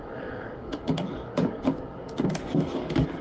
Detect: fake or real fake